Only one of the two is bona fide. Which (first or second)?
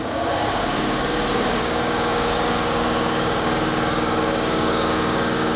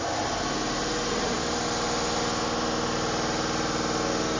second